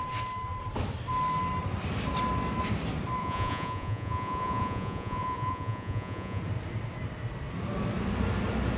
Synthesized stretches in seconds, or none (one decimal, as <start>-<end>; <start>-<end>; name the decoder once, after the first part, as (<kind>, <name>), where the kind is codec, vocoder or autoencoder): 3.2-6.4 (vocoder, Vocos)